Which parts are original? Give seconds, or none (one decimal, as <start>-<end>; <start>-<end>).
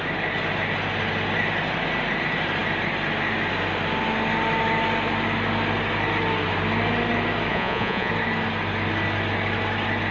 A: 0.0-7.5; 8.1-10.1